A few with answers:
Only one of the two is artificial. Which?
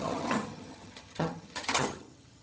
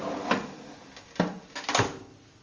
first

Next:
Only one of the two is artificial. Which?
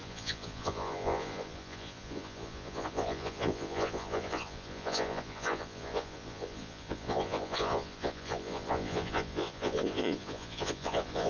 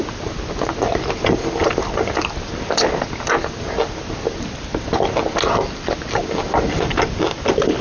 first